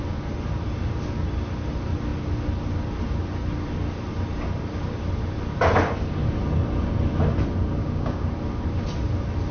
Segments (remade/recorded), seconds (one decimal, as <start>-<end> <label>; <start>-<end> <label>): 0.0-7.8 recorded; 7.8-8.3 remade; 8.3-9.5 recorded

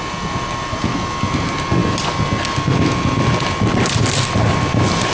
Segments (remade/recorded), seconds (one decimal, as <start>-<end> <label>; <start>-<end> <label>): 0.0-5.1 recorded